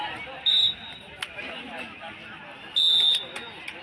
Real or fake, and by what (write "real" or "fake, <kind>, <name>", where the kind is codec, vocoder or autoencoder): real